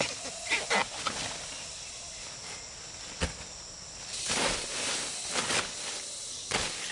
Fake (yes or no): no